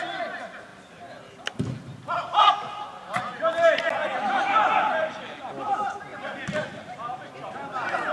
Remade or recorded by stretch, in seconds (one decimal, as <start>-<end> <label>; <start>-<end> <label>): 0.0-8.1 recorded